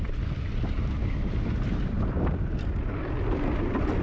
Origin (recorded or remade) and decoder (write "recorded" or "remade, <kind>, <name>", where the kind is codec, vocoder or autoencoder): remade, vocoder, BigVGAN v2